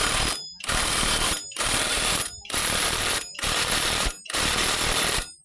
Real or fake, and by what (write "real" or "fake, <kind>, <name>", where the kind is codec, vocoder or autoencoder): fake, vocoder, BigVGAN v2